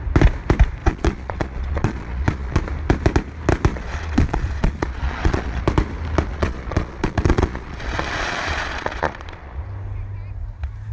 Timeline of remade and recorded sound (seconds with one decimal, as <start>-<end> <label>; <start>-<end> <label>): 0.0-0.8 recorded; 0.8-2.6 remade; 2.6-3.7 recorded; 3.7-5.6 remade; 5.6-6.3 recorded; 6.3-9.6 remade; 9.6-10.9 recorded

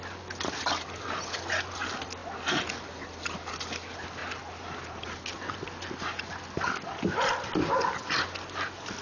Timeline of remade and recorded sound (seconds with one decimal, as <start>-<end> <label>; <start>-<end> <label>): 0.0-9.0 recorded

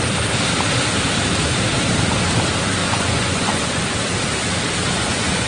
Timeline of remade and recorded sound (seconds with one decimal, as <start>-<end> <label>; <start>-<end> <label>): 0.0-2.8 recorded; 2.8-3.8 remade; 3.8-4.8 recorded; 4.8-5.5 remade

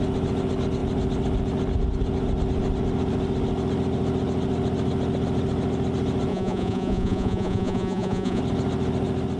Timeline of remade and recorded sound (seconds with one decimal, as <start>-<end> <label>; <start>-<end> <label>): 0.0-6.3 recorded; 6.3-8.4 remade; 8.4-9.4 recorded